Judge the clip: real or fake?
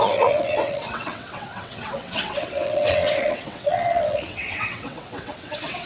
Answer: fake